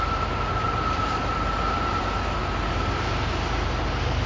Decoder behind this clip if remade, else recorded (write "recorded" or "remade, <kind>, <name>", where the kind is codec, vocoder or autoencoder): recorded